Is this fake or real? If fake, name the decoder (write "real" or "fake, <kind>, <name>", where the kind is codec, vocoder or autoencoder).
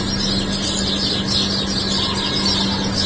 real